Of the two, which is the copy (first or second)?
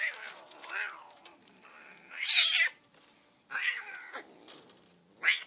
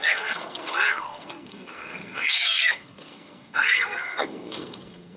second